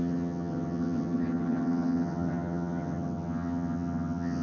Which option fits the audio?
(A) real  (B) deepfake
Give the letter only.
B